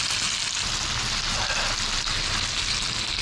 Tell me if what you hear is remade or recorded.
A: recorded